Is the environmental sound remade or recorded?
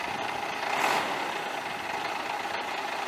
recorded